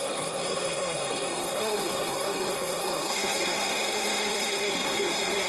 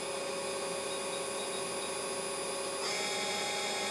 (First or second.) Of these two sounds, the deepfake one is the first